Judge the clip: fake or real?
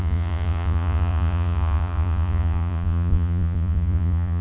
fake